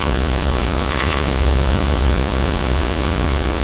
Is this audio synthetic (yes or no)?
yes